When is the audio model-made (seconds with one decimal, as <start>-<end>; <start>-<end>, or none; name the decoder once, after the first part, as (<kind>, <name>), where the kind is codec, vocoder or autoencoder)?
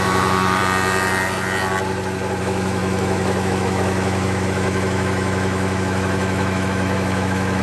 0.0-0.6 (autoencoder, DAC-VAE); 2.4-7.6